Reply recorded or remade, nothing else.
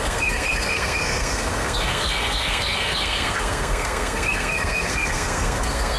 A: remade